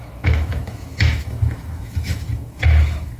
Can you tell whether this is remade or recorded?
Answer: remade